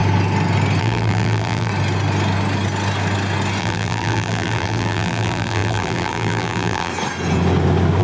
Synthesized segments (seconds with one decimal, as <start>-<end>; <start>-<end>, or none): 0.8-1.7; 3.6-6.9